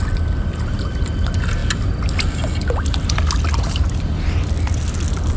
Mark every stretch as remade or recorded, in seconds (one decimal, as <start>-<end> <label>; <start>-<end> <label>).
0.0-5.4 recorded